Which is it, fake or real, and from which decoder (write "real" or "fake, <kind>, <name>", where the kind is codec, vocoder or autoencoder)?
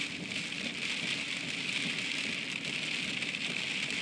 real